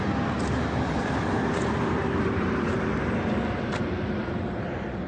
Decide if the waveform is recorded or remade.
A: recorded